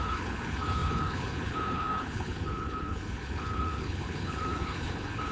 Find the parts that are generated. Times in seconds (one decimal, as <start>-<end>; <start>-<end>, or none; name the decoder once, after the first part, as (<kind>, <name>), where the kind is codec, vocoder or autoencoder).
0.0-5.3 (codec, HILCodec)

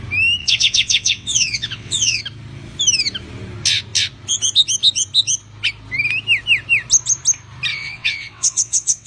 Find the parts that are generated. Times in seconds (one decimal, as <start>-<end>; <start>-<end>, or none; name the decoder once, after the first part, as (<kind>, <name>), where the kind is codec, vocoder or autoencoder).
0.4-2.2 (vocoder, WaveNeXt); 7.7-9.1

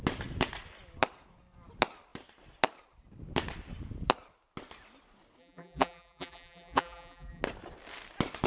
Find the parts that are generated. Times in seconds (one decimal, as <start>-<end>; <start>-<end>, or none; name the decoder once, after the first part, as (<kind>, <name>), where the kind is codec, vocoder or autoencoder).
5.4-7.4 (vocoder, BigVGAN v2)

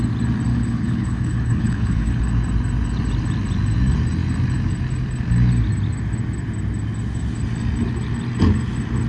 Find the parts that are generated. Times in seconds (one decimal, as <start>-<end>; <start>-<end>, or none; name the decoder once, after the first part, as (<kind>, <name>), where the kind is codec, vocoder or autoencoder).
0.5-2.2 (codec, HILCodec)

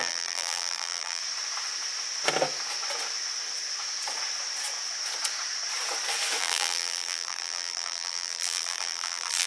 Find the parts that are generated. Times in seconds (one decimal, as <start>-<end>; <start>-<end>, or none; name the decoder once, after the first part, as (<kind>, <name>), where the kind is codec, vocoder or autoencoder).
0.0-1.2 (vocoder, BigVGAN v2); 6.4-9.5